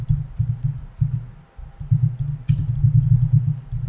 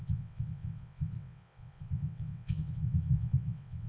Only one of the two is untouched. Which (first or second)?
first